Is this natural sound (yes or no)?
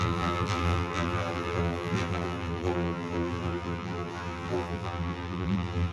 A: no